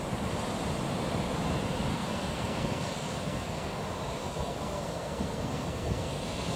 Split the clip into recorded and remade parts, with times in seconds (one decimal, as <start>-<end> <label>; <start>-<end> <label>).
0.0-1.9 recorded; 1.9-3.8 remade; 3.8-4.2 recorded; 4.2-6.6 remade